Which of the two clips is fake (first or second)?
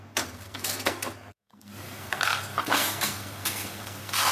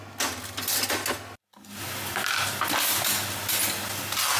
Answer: first